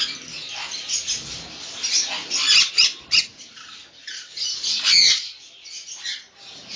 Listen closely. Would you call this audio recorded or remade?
recorded